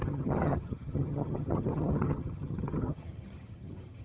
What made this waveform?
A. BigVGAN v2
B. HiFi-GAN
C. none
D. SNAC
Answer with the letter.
B